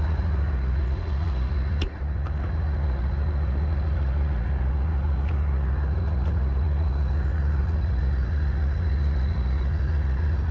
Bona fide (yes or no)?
no